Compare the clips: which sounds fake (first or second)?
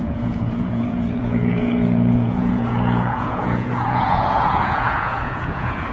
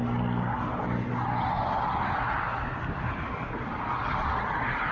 first